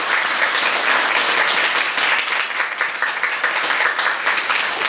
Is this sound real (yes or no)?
yes